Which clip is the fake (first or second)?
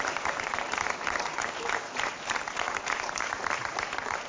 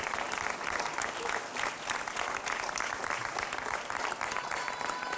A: first